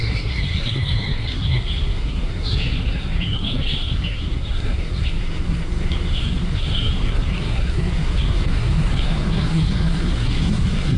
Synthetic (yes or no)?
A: yes